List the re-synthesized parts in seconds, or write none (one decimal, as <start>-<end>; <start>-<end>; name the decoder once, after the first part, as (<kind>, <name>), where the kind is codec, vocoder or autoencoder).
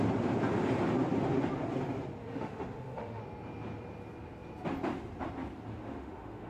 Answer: 2.2-3.2 (autoencoder, DAC-VAE); 5.8-6.5